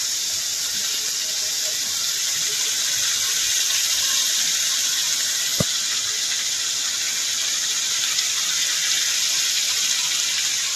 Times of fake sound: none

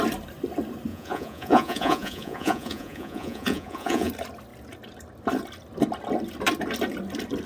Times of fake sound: 0.9-4.1 (vocoder, Vocos)